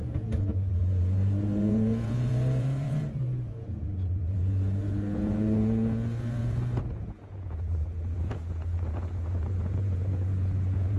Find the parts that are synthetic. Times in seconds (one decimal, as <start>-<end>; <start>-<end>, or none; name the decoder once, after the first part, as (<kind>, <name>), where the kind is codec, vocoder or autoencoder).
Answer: 0.0-11.0 (vocoder, Vocos)